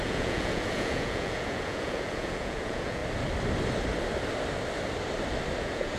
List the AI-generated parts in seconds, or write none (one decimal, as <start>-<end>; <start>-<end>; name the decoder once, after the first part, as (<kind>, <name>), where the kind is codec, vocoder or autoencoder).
0.0-3.0 (vocoder, Vocos); 5.6-6.0